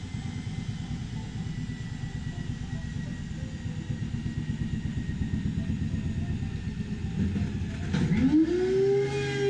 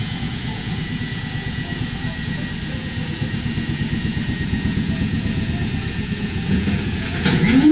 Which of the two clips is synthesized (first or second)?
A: second